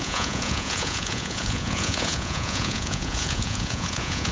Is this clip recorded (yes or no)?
no